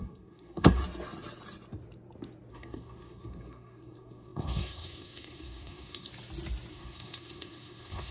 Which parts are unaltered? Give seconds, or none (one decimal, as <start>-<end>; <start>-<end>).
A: 0.8-2.5; 6.1-6.7